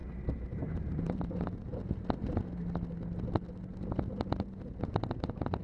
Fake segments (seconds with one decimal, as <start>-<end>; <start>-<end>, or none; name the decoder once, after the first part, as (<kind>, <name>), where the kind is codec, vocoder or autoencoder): 0.0-1.7 (vocoder, BigVGAN v2); 4.7-5.6